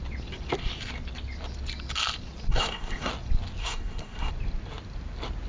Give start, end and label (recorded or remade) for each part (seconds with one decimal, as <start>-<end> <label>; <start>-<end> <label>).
0.0-2.5 recorded; 2.5-3.1 remade; 3.1-3.6 recorded; 3.6-4.3 remade; 4.3-5.5 recorded